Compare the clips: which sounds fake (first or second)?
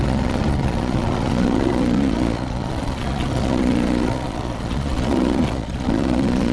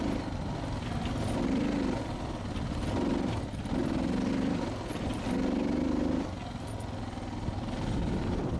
first